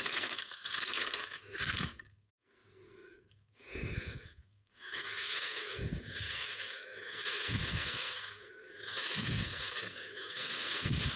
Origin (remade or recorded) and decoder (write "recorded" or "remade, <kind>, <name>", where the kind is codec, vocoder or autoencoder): remade, codec, SNAC